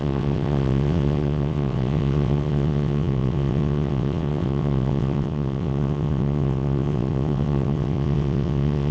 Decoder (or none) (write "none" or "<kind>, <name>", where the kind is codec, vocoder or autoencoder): vocoder, WaveNeXt